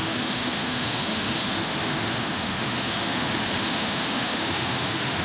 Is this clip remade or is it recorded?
remade